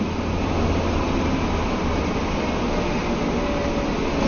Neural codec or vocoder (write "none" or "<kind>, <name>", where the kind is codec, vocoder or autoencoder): none